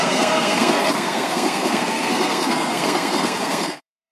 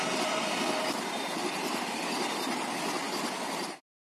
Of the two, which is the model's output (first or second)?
first